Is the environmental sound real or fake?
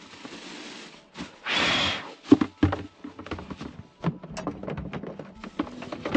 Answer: real